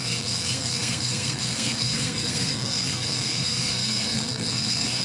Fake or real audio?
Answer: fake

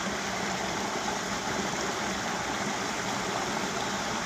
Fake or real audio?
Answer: real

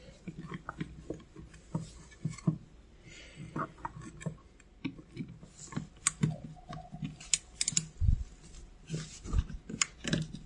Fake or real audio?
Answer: real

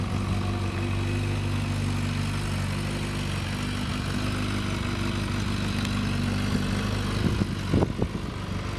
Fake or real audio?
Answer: real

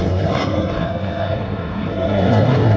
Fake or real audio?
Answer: fake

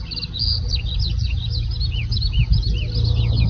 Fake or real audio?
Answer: real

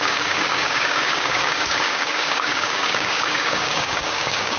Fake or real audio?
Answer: fake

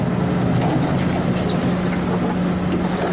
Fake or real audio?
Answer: real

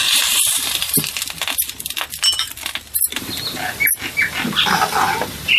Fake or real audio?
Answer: real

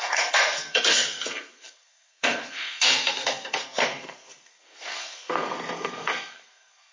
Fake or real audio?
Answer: fake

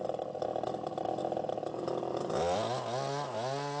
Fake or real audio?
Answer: real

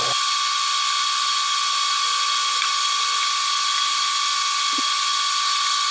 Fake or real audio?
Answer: real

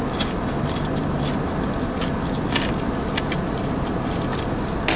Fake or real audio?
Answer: real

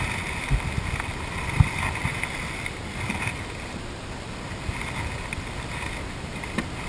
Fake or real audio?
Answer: real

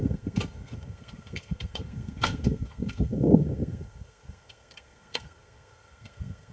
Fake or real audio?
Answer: fake